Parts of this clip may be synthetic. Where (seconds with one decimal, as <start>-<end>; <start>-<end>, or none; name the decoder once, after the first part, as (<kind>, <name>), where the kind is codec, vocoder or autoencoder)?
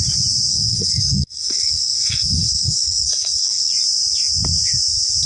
0.5-3.7 (codec, SNAC)